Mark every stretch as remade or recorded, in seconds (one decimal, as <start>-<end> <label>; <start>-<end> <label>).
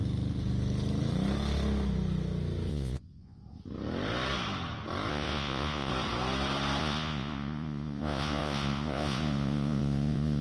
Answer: 0.0-2.7 recorded; 2.7-3.4 remade; 3.4-5.1 recorded; 5.1-5.9 remade; 5.9-6.8 recorded; 6.8-10.4 remade